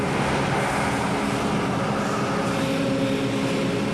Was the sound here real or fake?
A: real